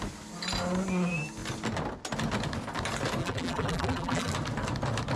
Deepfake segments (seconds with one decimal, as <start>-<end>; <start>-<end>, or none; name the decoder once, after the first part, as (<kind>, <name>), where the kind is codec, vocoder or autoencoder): 3.2-4.3 (vocoder, BigVGAN v2)